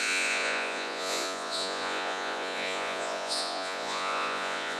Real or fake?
fake